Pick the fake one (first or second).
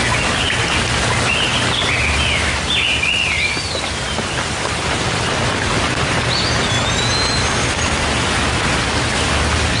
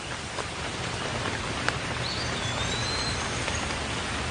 second